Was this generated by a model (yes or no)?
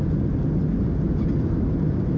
no